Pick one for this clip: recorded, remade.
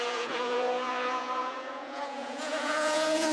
remade